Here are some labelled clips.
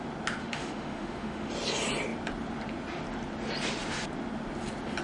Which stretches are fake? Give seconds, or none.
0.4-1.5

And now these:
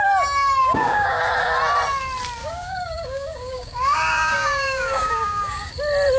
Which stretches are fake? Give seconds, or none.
0.6-1.2; 2.4-5.8

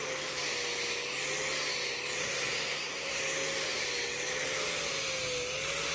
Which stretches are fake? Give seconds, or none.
2.2-3.2

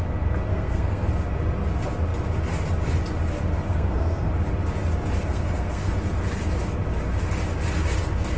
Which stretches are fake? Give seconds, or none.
0.5-1.1; 3.7-4.3; 5.3-5.9

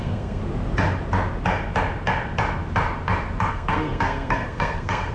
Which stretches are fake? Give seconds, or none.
0.0-0.4; 3.5-5.1